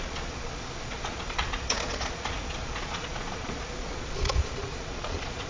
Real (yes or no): no